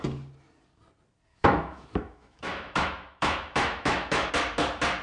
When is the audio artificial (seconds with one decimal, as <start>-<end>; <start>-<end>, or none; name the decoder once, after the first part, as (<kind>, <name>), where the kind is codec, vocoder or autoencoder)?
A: 1.3-4.3 (autoencoder, DAC-VAE)